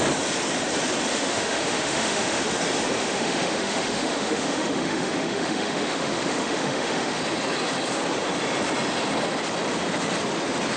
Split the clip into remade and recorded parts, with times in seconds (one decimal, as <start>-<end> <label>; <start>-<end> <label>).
0.0-1.1 recorded; 1.1-2.4 remade; 2.4-3.0 recorded; 3.0-7.2 remade; 7.2-10.8 recorded